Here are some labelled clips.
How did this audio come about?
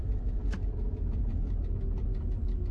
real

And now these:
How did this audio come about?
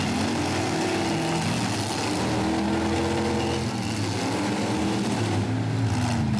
real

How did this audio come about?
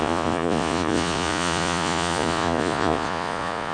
fake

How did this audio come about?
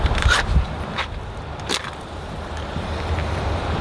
fake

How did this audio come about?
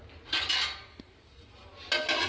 real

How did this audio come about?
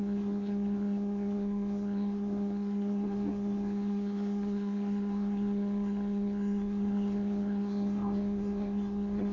fake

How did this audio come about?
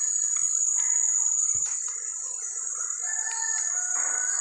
real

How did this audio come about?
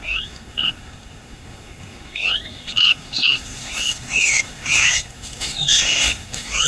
fake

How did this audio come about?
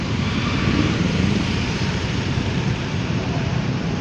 fake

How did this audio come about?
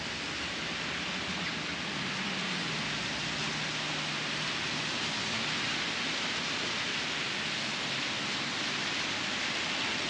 real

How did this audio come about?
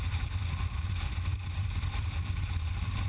fake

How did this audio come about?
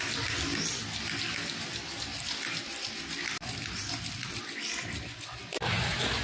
real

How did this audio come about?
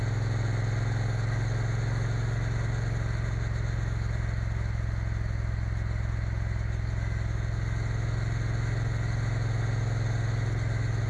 real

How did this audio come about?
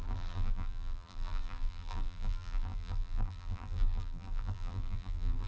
fake